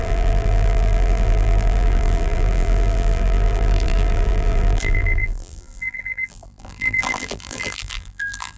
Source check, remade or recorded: remade